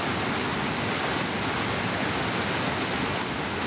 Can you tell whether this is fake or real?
real